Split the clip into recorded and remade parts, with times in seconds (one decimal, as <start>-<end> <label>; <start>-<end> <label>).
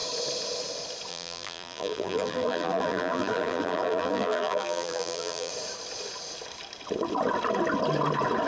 0.0-1.1 recorded; 1.1-5.5 remade; 5.5-8.5 recorded